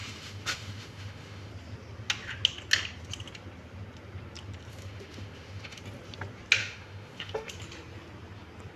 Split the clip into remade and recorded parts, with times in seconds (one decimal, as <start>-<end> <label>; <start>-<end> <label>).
0.0-1.5 remade; 1.5-4.7 recorded; 4.7-5.8 remade; 5.8-6.6 recorded; 6.6-7.5 remade; 7.5-8.8 recorded